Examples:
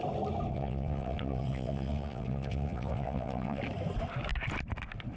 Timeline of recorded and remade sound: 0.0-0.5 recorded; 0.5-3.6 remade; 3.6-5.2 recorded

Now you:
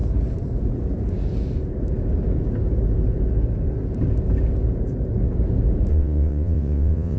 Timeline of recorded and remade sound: 0.0-5.9 recorded; 5.9-7.2 remade

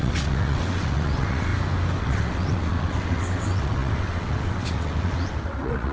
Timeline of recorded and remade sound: 0.0-1.5 remade; 1.5-2.0 recorded; 2.0-5.9 remade